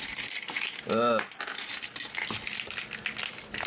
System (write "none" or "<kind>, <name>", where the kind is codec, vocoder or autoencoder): none